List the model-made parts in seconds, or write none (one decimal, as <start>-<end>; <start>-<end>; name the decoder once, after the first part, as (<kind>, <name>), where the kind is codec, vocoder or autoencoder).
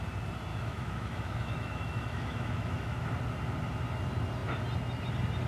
0.5-3.1 (autoencoder, DAC-VAE)